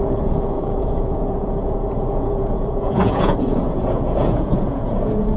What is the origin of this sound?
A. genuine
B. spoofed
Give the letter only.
B